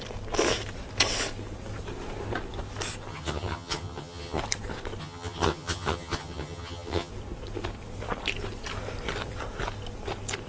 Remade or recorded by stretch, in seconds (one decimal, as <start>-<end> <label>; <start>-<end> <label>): 0.0-3.1 recorded; 3.1-4.4 remade; 4.4-5.0 recorded; 5.0-7.1 remade; 7.1-10.5 recorded